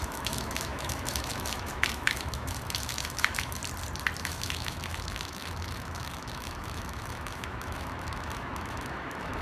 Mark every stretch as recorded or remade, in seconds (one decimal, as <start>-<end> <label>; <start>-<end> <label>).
0.0-3.6 remade; 3.6-4.2 recorded; 4.2-9.4 remade